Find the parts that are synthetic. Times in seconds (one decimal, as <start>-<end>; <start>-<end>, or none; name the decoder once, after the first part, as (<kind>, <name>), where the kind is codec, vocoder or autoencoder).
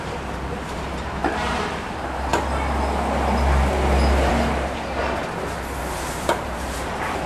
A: 0.0-1.2 (vocoder, BigVGAN v2); 1.7-2.3; 4.3-5.2; 5.8-7.3